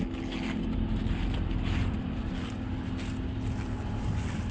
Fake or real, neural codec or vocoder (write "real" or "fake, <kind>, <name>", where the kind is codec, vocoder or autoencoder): real